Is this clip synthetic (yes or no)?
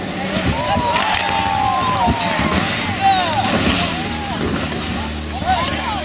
no